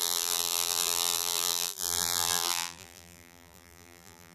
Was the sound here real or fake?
fake